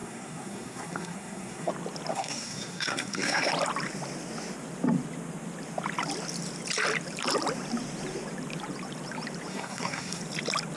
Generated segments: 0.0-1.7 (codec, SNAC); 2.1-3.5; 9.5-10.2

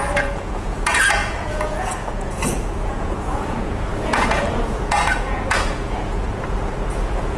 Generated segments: 0.0-7.4 (vocoder, Vocos)

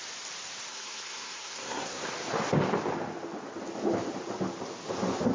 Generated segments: 0.7-2.0 (codec, SNAC)